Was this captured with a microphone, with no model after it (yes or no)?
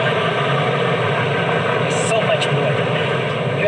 yes